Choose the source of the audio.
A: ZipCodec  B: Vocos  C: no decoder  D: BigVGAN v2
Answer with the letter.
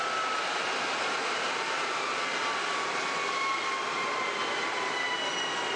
C